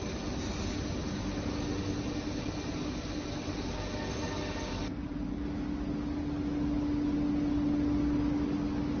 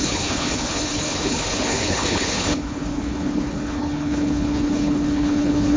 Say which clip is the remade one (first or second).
second